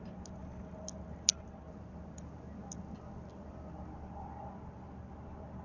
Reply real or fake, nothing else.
real